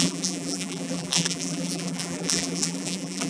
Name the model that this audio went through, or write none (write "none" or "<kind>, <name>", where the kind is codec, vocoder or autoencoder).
vocoder, BigVGAN v2